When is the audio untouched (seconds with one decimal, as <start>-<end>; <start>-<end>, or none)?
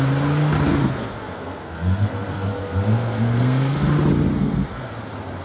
0.0-0.8; 3.9-4.3; 4.9-5.4